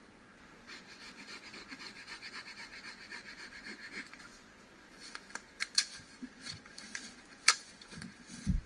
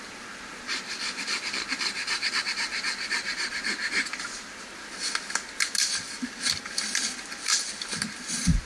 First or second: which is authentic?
second